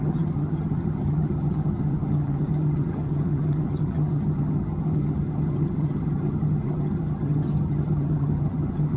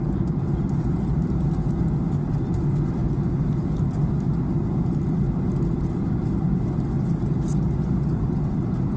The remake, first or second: first